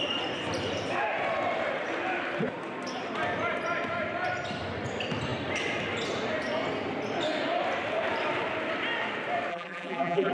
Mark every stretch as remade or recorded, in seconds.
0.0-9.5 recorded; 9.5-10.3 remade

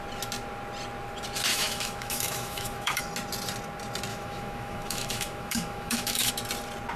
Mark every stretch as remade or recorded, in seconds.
0.0-1.5 recorded; 1.5-3.0 remade; 3.0-4.1 recorded; 4.1-6.3 remade; 6.3-7.0 recorded

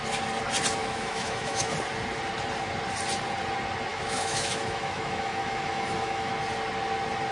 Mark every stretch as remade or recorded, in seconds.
0.0-0.8 recorded; 0.8-1.7 remade; 1.7-3.9 recorded; 3.9-6.3 remade; 6.3-7.3 recorded

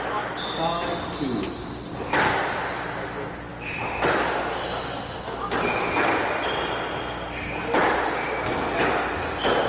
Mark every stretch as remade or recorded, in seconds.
0.0-9.7 recorded

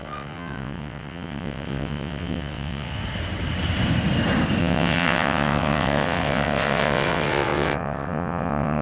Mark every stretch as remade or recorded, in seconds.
0.0-3.0 remade; 3.0-4.6 recorded; 4.6-8.8 remade

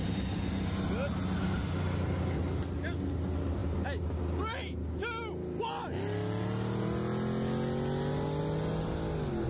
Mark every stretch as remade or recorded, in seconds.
0.0-9.5 recorded

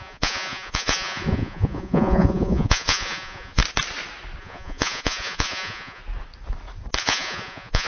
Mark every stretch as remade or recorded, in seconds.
0.0-3.6 remade; 3.6-4.4 recorded; 4.4-6.0 remade; 6.0-7.0 recorded; 7.0-7.9 remade